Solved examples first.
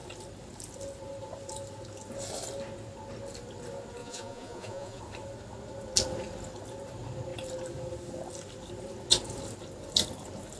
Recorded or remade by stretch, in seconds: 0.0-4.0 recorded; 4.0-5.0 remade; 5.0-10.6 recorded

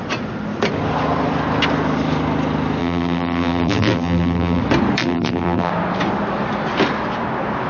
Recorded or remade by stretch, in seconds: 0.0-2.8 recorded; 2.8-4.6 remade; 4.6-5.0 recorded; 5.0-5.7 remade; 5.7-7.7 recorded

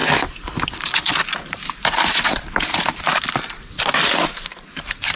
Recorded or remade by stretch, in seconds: 0.0-1.4 recorded; 1.4-3.1 remade; 3.1-4.1 recorded; 4.1-5.2 remade

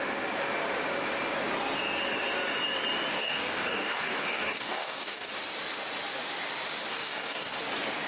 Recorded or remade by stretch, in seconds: 0.0-3.1 recorded; 3.1-5.3 remade; 5.3-6.9 recorded; 6.9-7.6 remade; 7.6-8.1 recorded